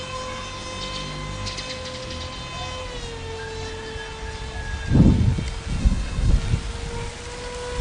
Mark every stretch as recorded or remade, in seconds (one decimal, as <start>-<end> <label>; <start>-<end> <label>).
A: 0.0-5.8 recorded; 5.8-6.3 remade; 6.3-7.8 recorded